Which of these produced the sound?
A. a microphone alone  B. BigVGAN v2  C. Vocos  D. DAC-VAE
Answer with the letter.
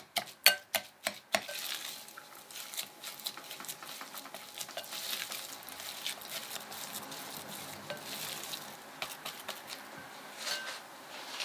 A